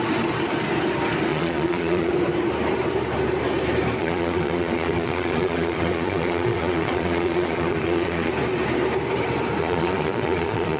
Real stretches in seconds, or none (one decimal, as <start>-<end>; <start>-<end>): 0.0-1.3; 2.1-4.0; 8.3-9.6